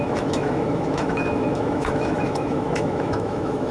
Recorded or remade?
remade